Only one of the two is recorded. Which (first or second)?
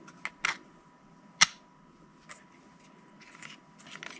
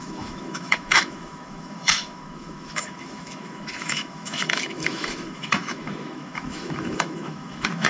first